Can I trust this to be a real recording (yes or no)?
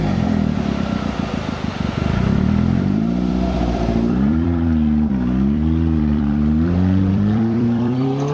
no